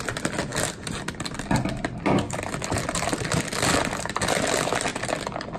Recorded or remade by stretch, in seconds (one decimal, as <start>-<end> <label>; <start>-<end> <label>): 0.0-5.6 recorded